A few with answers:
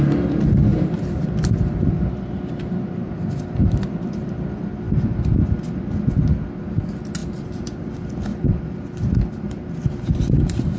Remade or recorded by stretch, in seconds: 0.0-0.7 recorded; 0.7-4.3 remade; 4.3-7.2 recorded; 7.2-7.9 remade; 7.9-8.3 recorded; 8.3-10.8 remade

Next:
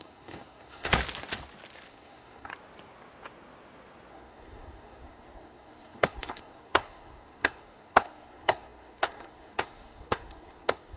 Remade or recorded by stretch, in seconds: 0.0-1.0 remade; 1.0-1.9 recorded; 1.9-2.5 remade; 2.5-4.1 recorded; 4.1-11.0 remade

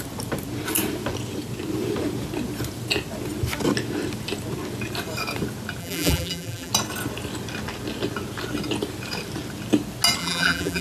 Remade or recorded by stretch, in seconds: 0.0-5.8 recorded; 5.8-6.7 remade; 6.7-10.2 recorded; 10.2-10.8 remade

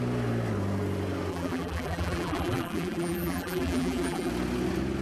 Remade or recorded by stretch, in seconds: 0.0-1.3 recorded; 1.3-4.3 remade; 4.3-5.0 recorded